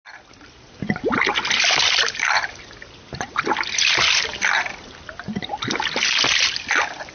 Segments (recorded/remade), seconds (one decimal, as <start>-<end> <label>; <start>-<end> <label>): 0.0-1.3 recorded; 1.3-5.6 remade; 5.6-7.1 recorded